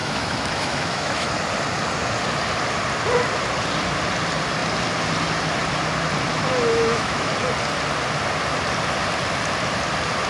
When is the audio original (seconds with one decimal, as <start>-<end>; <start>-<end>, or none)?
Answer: 1.3-6.3; 7.3-10.3